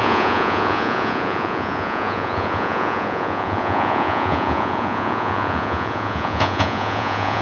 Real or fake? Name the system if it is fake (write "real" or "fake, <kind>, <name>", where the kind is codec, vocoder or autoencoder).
fake, vocoder, Vocos